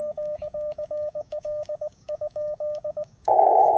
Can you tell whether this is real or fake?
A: fake